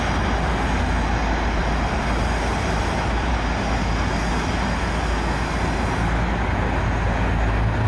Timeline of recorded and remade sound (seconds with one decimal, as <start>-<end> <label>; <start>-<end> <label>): 0.0-1.6 recorded; 1.6-3.3 remade; 3.3-7.9 recorded